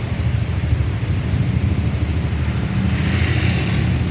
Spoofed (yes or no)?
no